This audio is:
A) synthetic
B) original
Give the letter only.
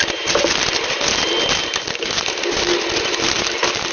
B